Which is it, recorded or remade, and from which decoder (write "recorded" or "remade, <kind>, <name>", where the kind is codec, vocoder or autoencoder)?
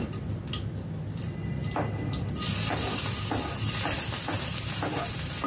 recorded